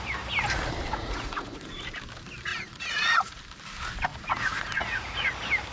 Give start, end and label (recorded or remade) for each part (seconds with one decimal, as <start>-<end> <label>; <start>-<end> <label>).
0.0-0.9 recorded; 0.9-1.7 remade; 1.7-2.5 recorded; 2.5-3.4 remade; 3.4-4.1 recorded; 4.1-5.3 remade; 5.3-5.7 recorded